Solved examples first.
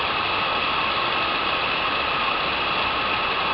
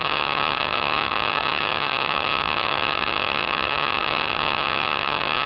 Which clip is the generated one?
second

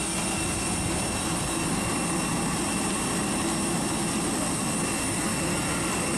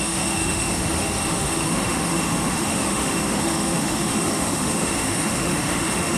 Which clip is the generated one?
second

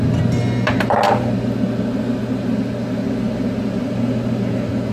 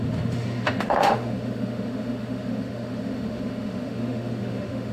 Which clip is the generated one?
second